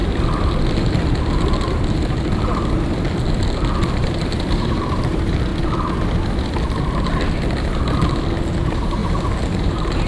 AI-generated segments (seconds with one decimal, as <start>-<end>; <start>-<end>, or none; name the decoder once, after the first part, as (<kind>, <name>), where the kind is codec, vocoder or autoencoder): 3.9-5.5 (vocoder, BigVGAN v2); 8.6-9.0; 9.6-10.1